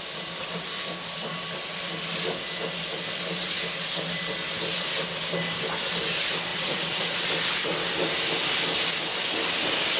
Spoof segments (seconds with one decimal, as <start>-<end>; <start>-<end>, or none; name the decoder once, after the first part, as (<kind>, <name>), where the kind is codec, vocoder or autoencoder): 6.5-7.2 (vocoder, Vocos)